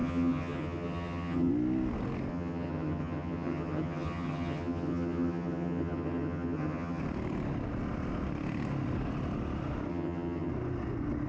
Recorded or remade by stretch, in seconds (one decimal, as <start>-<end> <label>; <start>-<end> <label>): 0.0-1.5 remade; 1.5-2.3 recorded; 2.3-7.0 remade; 7.0-9.9 recorded; 9.9-10.5 remade; 10.5-11.3 recorded